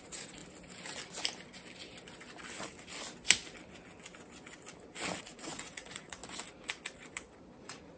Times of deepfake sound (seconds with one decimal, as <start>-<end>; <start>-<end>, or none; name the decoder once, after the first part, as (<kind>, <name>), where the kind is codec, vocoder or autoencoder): 0.0-0.4 (vocoder, Vocos); 5.2-6.2; 7.6-8.0